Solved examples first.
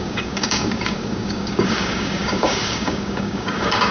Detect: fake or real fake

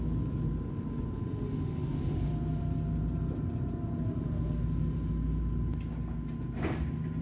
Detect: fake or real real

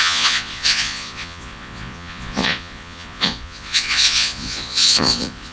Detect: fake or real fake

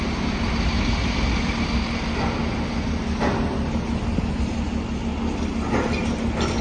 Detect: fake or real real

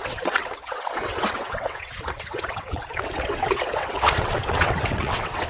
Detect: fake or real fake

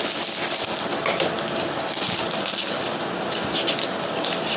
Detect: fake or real real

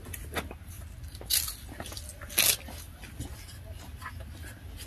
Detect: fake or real real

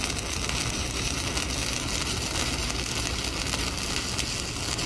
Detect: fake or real real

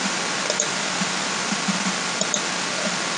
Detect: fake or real real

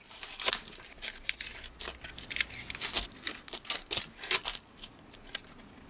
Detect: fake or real real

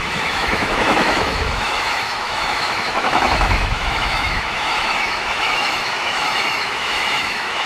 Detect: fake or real fake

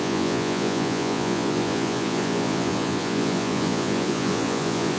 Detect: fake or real fake